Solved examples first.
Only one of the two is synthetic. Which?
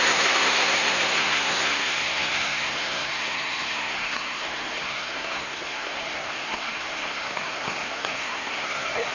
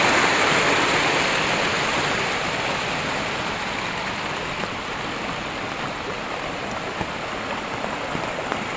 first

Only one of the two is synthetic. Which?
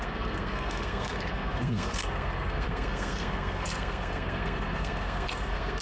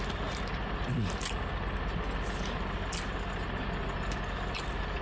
first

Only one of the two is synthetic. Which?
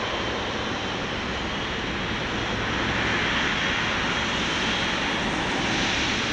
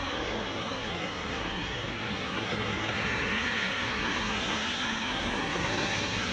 second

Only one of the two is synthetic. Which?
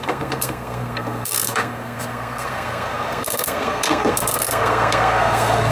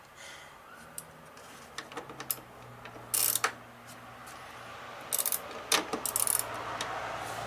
first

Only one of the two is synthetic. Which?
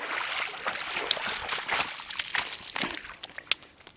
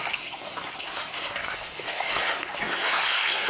second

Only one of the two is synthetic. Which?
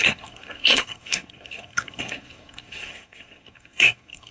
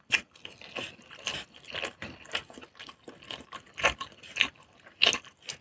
first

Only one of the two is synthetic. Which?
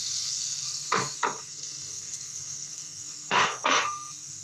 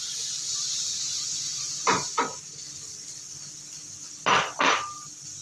first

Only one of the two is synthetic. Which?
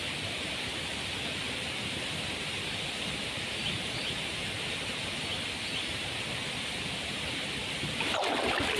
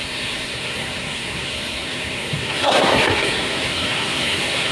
second